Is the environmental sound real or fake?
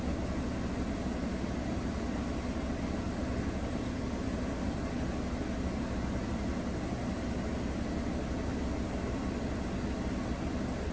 real